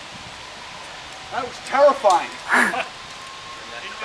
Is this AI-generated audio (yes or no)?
no